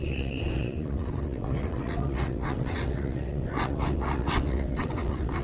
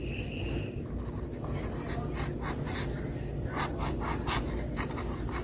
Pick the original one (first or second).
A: second